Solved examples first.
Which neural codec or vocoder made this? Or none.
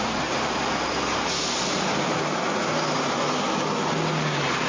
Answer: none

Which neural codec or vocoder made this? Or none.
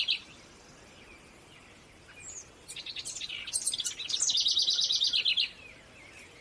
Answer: none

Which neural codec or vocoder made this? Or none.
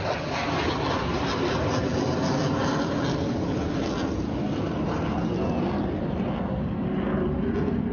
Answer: none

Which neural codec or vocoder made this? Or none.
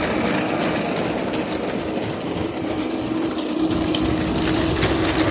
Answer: none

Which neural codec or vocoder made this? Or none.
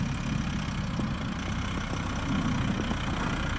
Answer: none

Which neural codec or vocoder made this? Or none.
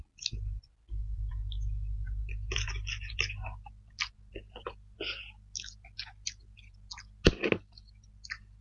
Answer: none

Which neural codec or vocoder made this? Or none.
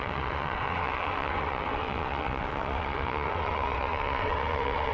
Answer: vocoder, WaveNeXt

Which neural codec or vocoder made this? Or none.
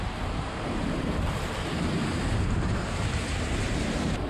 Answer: vocoder, BigVGAN v2